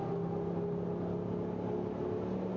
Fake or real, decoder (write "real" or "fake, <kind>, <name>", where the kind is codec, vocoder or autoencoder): real